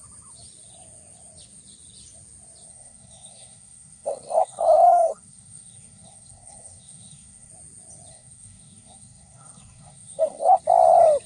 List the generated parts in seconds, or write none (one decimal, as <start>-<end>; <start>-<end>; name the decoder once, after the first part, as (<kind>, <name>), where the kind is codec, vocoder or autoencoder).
2.7-7.5 (codec, SNAC); 8.1-10.6